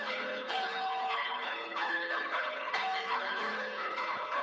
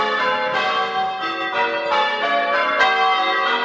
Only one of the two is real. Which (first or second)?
second